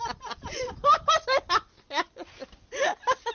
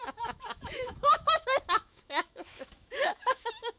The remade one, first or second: second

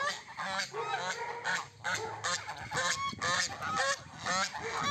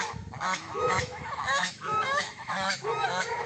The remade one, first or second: second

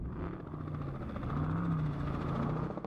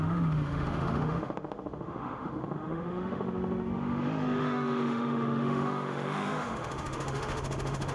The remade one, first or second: second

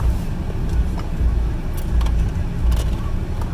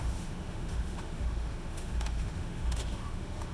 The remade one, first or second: second